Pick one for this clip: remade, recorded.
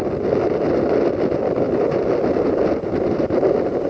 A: recorded